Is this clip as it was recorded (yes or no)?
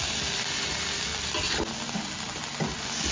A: yes